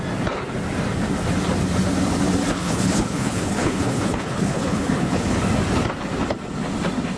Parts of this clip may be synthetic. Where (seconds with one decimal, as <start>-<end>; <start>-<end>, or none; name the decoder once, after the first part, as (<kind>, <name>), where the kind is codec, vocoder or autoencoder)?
2.5-5.4 (codec, HILCodec)